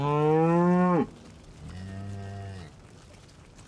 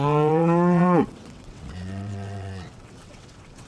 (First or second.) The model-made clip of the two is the second